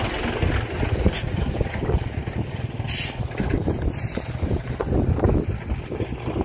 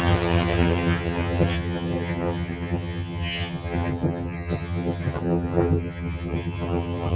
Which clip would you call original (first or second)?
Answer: first